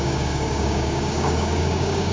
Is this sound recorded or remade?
remade